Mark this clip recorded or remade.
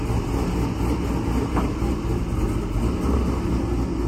recorded